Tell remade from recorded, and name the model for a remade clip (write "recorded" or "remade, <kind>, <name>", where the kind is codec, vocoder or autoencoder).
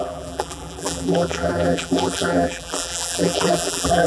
remade, vocoder, BigVGAN v2